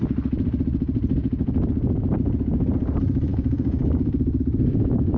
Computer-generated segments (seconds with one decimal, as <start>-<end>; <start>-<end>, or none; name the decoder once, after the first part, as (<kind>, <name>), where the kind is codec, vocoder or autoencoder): 3.3-4.4 (codec, DAC)